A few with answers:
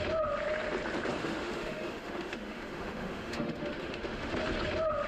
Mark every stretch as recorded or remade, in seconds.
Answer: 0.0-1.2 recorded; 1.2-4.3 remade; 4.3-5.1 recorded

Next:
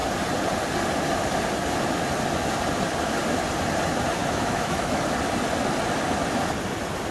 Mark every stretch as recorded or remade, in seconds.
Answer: 0.0-4.2 recorded; 4.2-5.0 remade; 5.0-7.1 recorded